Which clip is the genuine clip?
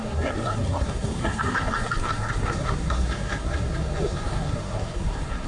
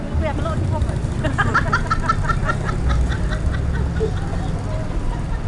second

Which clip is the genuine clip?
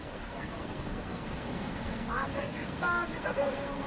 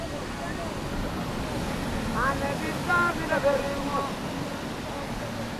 second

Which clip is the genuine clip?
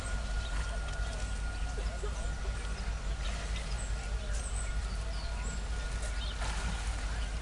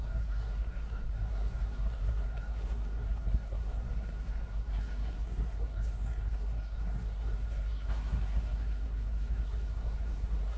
first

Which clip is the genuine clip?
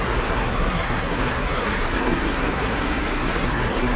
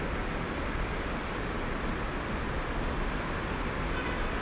second